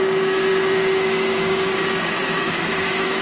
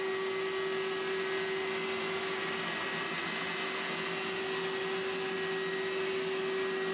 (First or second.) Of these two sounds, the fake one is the first